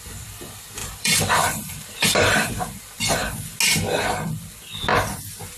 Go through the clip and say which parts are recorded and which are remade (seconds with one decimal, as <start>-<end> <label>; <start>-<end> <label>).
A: 0.0-0.8 recorded; 0.8-2.5 remade; 2.5-5.6 recorded